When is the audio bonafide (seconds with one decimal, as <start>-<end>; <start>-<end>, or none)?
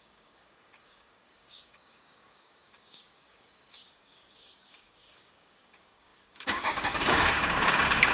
none